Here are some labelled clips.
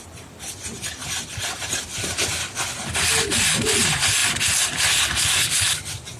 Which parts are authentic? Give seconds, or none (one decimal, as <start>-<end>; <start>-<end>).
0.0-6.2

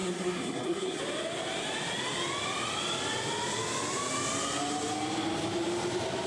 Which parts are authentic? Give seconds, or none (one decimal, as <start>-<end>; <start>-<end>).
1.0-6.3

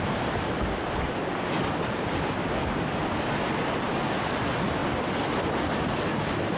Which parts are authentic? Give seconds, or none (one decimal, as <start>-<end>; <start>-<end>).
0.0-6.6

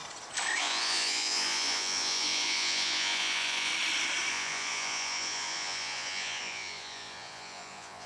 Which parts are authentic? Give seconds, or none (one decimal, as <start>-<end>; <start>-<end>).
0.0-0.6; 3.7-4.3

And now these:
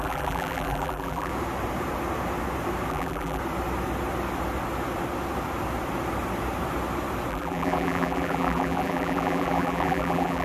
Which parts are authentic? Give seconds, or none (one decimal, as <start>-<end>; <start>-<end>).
1.3-2.9; 3.4-7.3